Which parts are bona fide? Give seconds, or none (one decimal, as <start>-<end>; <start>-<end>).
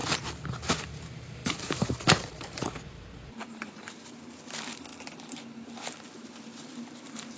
0.0-0.8; 4.9-6.8